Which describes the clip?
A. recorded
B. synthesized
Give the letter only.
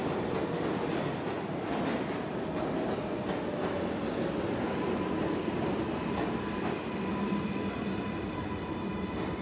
A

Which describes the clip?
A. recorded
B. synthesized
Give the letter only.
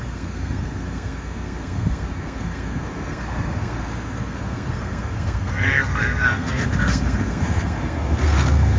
B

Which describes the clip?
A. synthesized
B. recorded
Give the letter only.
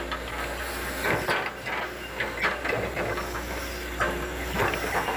B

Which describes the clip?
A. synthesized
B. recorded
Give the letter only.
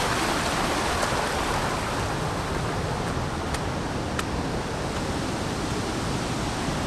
B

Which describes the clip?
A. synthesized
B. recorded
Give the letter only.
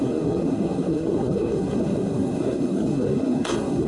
A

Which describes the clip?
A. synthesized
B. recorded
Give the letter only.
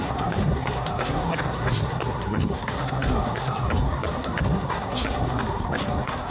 A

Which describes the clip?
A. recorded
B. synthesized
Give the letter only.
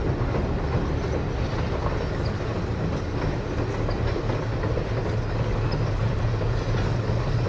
A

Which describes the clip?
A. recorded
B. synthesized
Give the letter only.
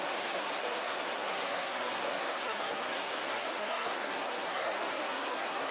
B